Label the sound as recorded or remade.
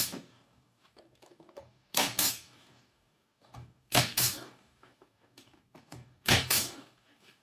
remade